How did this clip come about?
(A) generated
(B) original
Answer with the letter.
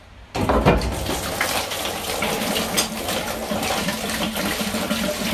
B